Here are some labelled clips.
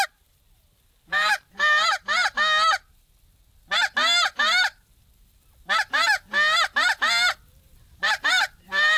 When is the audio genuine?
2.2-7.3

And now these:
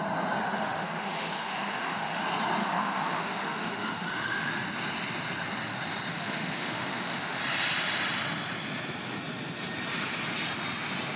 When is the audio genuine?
0.0-0.4; 2.2-2.6; 4.5-6.1; 7.4-11.2

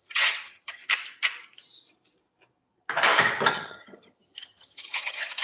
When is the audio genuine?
0.8-3.5

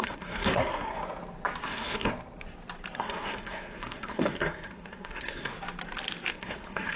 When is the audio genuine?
1.0-1.6; 2.1-3.0; 5.5-6.3

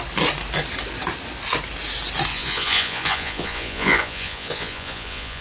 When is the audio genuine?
0.0-2.3

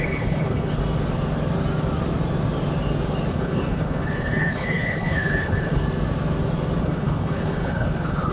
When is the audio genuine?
0.8-3.3; 5.8-6.8